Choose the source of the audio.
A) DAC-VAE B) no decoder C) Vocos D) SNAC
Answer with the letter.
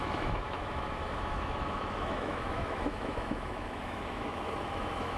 A